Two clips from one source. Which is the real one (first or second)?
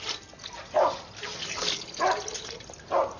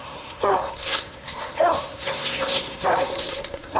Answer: first